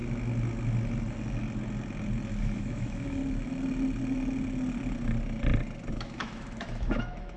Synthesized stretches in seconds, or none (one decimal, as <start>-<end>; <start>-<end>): 2.4-3.2; 5.9-7.4